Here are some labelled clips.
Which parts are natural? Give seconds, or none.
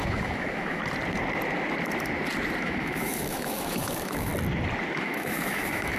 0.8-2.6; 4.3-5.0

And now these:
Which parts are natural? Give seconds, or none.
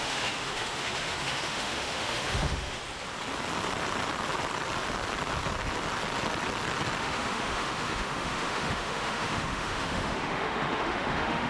2.8-7.0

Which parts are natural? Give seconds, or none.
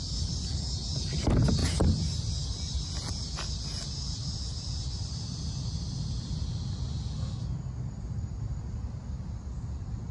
0.0-10.1